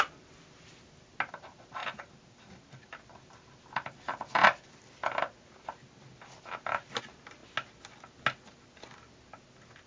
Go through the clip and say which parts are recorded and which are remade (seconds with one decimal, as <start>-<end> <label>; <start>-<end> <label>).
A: 0.0-9.9 recorded